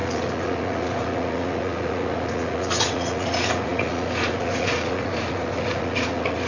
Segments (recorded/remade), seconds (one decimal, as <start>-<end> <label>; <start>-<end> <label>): 0.0-6.5 remade